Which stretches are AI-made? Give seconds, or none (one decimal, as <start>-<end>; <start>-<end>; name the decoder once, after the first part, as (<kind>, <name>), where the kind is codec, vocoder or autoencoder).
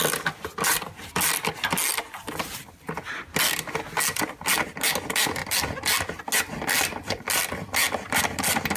none